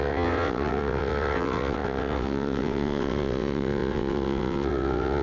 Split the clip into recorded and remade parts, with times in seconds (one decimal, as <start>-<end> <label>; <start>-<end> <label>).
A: 0.0-5.2 remade